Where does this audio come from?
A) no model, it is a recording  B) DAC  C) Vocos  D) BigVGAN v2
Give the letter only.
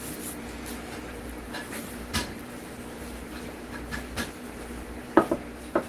D